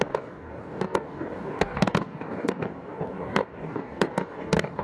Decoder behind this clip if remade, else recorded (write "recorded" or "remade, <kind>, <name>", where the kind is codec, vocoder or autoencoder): remade, codec, DAC